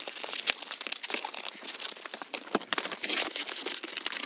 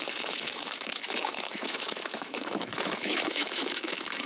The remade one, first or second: second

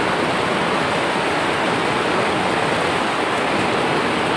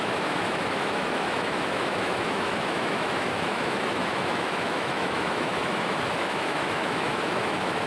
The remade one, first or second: second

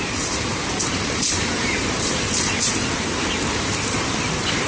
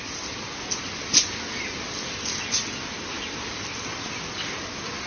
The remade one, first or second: first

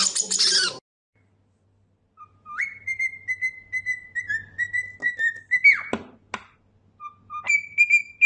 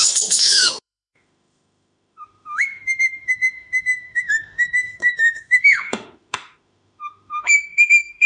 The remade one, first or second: second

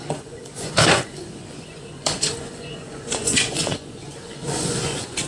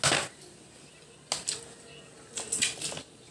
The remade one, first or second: first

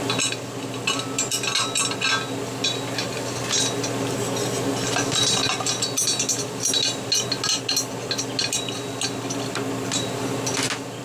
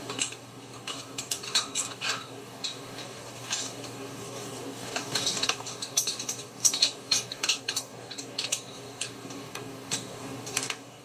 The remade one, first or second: second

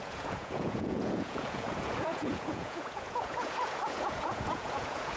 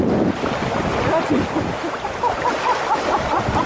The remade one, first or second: first